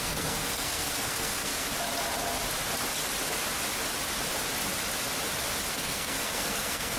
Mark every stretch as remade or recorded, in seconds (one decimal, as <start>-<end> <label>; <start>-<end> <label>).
0.0-1.7 remade; 1.7-5.7 recorded; 5.7-7.0 remade